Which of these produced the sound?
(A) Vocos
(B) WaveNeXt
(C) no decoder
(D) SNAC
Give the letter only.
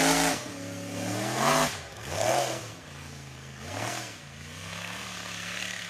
D